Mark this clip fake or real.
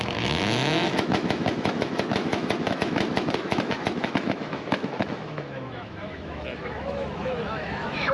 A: fake